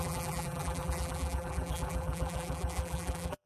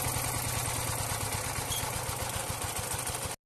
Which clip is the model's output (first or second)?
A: first